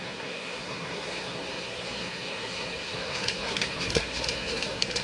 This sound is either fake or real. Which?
fake